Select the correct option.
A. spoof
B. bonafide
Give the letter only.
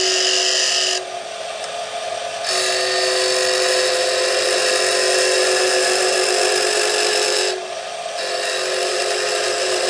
B